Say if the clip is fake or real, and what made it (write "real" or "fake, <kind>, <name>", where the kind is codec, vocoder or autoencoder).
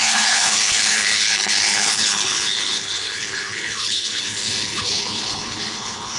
fake, codec, HILCodec